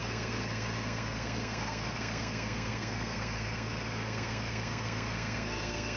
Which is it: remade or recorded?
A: remade